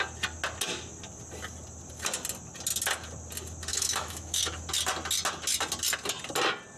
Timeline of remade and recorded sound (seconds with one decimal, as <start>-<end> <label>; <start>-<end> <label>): 0.0-3.7 recorded; 3.7-4.4 remade; 4.4-6.8 recorded